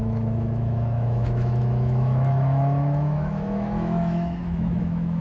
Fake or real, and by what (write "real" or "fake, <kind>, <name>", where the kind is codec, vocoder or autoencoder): fake, autoencoder, DAC-VAE